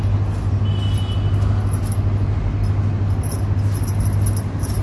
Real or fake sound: real